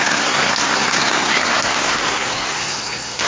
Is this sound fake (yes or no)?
yes